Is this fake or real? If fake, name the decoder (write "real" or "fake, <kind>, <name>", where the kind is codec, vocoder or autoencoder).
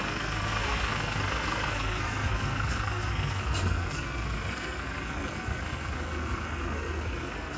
fake, codec, SNAC